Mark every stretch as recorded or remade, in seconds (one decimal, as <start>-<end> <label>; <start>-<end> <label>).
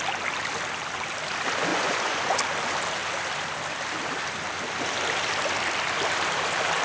0.0-1.7 recorded; 1.7-2.4 remade; 2.4-6.8 recorded